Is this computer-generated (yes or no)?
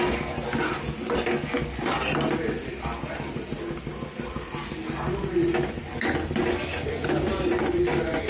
no